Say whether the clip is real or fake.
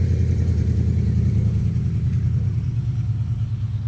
fake